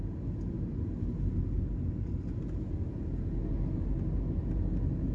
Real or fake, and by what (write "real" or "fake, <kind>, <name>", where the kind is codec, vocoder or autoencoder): real